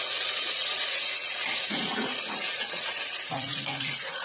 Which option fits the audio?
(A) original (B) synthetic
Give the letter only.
B